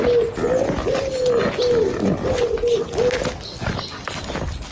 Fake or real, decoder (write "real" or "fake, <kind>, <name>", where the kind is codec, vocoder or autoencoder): real